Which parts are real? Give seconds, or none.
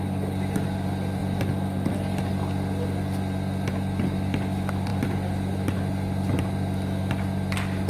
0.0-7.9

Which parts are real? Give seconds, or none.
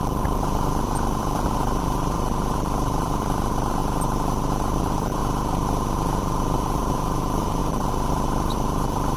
3.8-4.8; 5.2-6.2